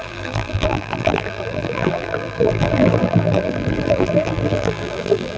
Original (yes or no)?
no